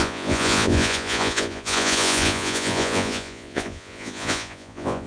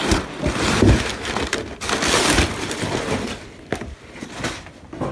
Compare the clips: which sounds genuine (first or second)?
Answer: second